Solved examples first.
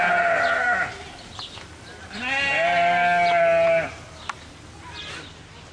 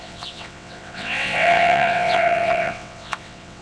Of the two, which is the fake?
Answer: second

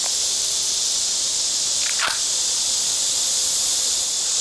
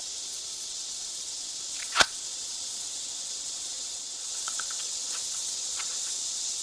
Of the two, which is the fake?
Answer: second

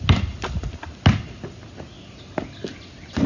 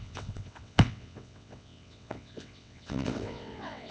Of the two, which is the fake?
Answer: second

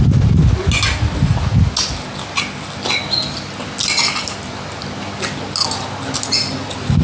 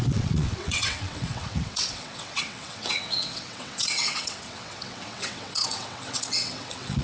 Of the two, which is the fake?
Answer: second